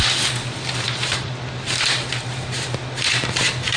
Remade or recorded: remade